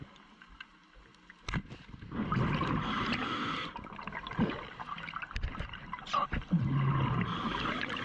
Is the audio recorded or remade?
recorded